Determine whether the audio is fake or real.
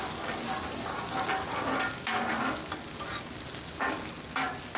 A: real